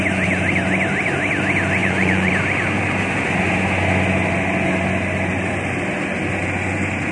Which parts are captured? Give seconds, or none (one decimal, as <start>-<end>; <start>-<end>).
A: 0.0-1.8; 2.3-7.1